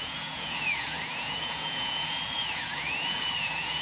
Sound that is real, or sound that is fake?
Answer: fake